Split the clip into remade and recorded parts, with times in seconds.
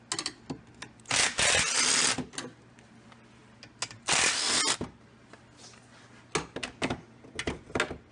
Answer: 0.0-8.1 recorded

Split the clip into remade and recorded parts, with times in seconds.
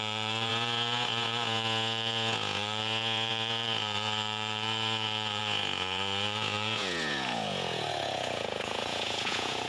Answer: 0.0-9.7 remade